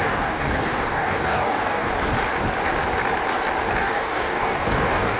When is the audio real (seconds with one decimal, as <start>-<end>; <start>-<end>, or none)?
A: 1.9-3.8